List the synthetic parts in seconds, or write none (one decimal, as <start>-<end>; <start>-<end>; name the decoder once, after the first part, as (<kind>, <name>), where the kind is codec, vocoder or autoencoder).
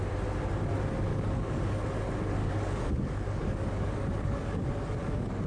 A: 1.1-1.8 (codec, DAC); 2.4-5.5